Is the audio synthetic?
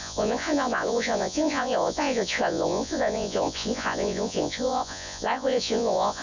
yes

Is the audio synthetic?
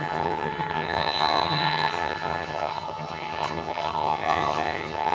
yes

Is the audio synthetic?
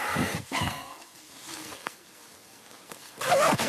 yes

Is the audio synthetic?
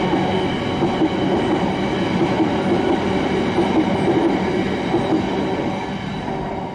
no